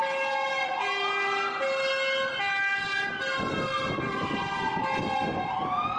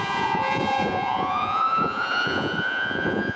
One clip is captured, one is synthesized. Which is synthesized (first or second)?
second